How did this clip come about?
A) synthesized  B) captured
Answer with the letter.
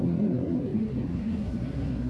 A